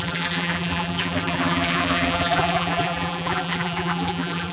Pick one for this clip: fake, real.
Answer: fake